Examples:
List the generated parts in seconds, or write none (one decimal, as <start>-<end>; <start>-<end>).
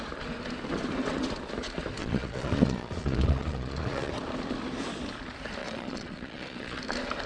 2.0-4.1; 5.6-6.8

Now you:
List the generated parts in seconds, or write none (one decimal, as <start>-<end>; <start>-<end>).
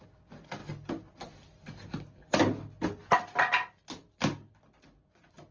none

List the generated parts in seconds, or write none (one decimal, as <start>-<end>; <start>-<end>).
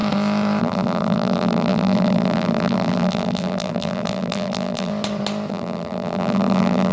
0.6-4.9; 5.5-6.9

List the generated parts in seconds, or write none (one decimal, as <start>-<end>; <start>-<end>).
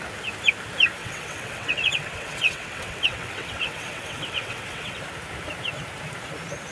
1.0-5.0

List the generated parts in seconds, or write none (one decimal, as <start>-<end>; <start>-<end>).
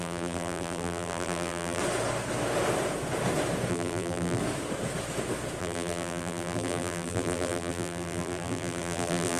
0.0-1.8; 3.7-4.4; 5.6-9.4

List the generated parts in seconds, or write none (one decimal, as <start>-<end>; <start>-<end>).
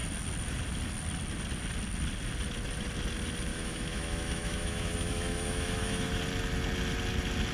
3.5-6.2